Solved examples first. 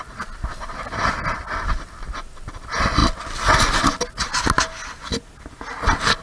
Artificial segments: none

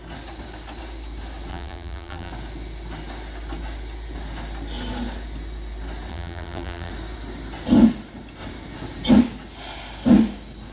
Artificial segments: 1.5-2.3; 6.1-6.9

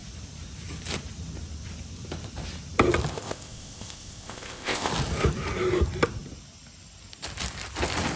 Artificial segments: 3.1-4.9

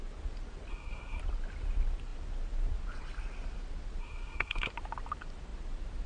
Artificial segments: 0.7-1.2; 4.0-4.7

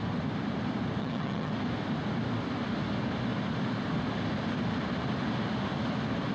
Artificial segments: 1.0-1.5